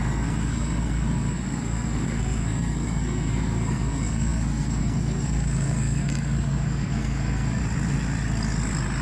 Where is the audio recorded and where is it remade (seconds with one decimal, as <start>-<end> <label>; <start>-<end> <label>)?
0.0-7.6 remade; 7.6-9.0 recorded